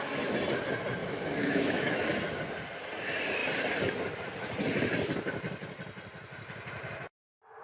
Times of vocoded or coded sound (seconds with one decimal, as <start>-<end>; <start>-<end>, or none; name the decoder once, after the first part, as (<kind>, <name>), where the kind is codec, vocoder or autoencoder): 1.0-2.2 (autoencoder, DAC-VAE)